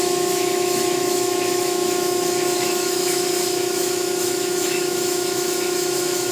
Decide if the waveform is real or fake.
fake